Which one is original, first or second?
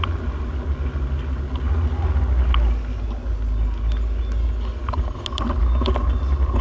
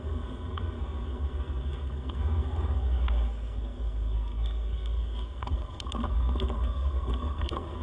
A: first